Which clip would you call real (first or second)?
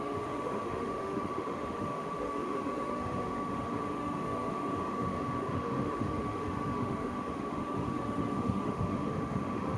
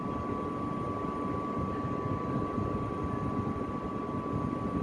second